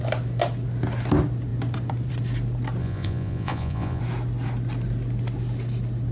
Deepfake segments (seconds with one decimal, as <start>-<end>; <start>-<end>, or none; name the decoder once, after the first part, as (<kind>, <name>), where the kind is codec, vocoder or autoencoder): 2.8-4.0 (vocoder, Vocos)